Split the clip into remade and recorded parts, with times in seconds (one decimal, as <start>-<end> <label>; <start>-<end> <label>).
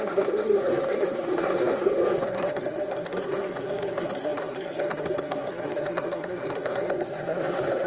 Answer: 0.0-7.9 remade